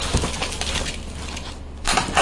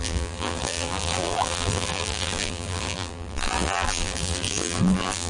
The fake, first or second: second